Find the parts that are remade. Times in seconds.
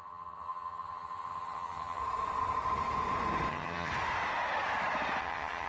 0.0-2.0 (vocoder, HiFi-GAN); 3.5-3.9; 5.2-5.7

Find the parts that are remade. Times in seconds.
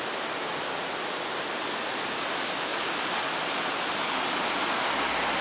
none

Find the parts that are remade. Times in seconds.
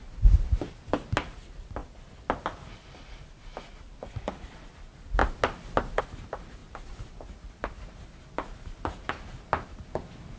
none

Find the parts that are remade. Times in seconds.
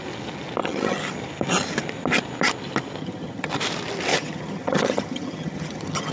0.6-1.1 (vocoder, HiFi-GAN); 3.0-3.5; 4.1-6.1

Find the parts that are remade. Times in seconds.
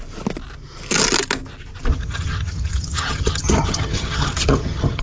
1.9-5.0 (vocoder, HiFi-GAN)